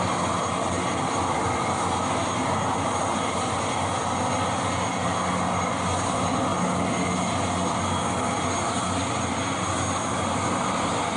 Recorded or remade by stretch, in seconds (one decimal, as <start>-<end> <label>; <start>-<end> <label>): 0.0-11.2 recorded